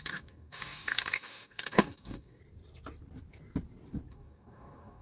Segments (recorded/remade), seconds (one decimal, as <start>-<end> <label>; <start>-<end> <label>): 0.0-2.4 remade; 2.4-4.1 recorded; 4.1-5.0 remade

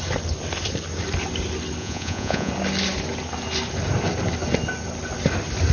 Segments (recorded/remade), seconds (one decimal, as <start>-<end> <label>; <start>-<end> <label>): 0.0-1.8 recorded; 1.8-2.5 remade; 2.5-5.7 recorded

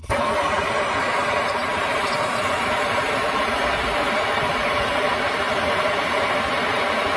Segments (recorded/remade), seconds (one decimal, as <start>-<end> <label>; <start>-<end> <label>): 0.0-7.2 remade

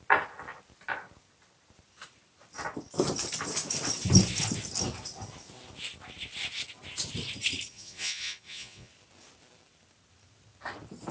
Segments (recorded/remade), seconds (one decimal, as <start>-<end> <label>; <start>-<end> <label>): 0.0-7.7 recorded; 7.7-8.9 remade; 8.9-11.1 recorded

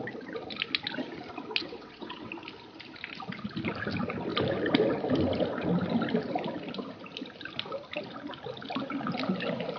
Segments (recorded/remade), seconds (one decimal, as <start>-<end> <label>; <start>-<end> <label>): 0.0-1.6 recorded; 1.6-2.3 remade; 2.3-9.8 recorded